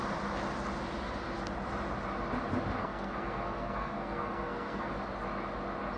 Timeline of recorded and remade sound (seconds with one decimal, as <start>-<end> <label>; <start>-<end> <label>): 0.0-2.8 recorded; 2.8-4.9 remade; 4.9-6.0 recorded